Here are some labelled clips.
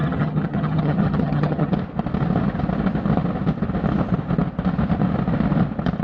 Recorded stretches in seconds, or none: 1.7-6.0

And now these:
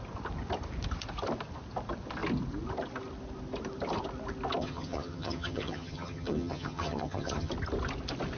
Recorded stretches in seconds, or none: 0.0-4.6; 7.5-8.4